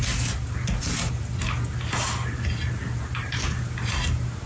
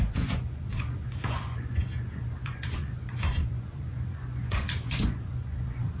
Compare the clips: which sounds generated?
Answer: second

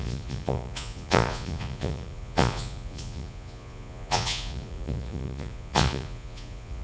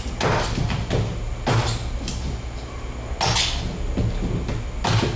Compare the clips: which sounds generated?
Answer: first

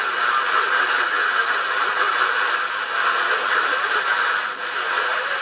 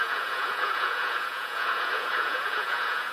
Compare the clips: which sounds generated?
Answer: second